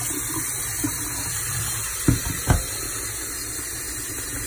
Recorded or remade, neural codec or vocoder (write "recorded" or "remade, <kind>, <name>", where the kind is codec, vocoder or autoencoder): recorded